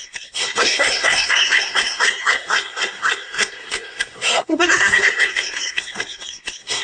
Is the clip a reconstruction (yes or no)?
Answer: yes